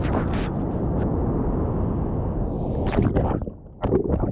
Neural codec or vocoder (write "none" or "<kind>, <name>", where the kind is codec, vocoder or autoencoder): none